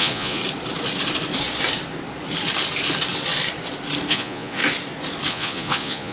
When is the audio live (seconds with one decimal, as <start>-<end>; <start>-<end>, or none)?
0.4-4.1; 4.6-5.3